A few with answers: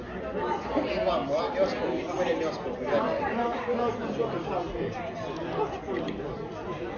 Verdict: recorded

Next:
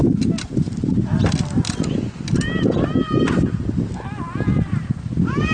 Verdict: recorded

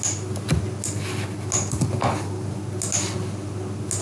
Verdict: recorded